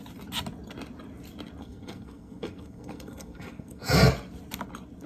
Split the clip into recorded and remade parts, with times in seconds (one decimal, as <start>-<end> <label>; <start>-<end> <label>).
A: 0.0-1.6 recorded; 1.6-4.0 remade; 4.0-5.1 recorded